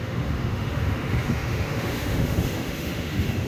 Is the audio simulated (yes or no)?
yes